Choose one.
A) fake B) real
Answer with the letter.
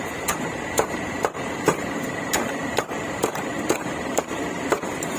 A